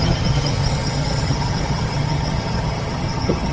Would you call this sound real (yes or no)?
no